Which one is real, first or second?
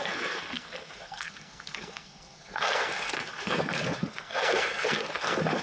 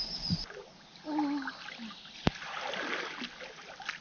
second